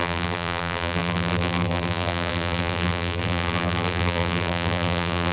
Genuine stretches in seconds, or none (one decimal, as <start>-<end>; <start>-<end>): none